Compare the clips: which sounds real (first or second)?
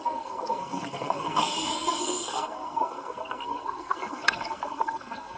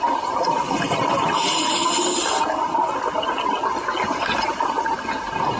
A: second